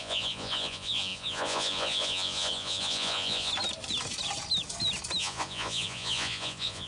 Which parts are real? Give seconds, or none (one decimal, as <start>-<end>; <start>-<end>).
3.5-5.2